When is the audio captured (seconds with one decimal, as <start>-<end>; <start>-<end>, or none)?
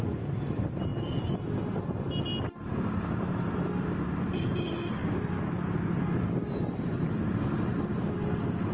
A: 0.0-8.7